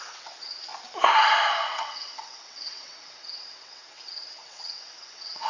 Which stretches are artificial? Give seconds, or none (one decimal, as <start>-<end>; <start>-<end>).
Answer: 0.0-0.7; 1.7-5.5